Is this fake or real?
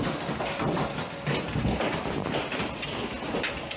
real